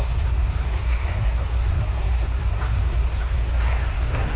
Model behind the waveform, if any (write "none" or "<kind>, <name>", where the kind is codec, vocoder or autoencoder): codec, SNAC